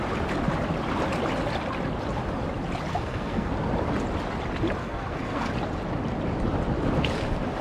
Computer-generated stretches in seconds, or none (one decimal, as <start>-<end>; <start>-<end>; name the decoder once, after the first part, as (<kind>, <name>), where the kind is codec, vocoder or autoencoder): 2.9-3.5 (codec, SNAC); 4.8-5.5